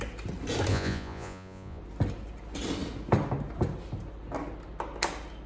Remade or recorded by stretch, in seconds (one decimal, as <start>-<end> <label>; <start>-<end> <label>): 0.0-0.7 recorded; 0.7-1.8 remade; 1.8-5.5 recorded